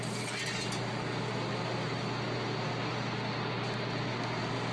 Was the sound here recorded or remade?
recorded